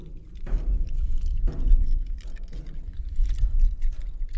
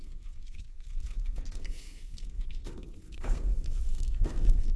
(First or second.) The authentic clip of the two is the first